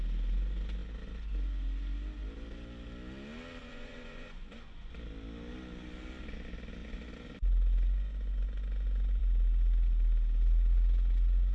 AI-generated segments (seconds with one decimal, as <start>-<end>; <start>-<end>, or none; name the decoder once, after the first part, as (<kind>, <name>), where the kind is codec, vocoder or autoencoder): 3.6-4.9 (vocoder, Vocos)